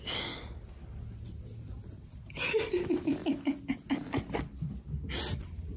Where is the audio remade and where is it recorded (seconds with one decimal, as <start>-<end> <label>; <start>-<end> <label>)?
0.0-5.8 recorded